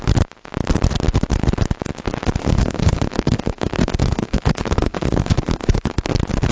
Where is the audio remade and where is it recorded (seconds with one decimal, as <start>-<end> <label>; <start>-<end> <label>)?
0.0-2.4 recorded; 2.4-6.1 remade; 6.1-6.5 recorded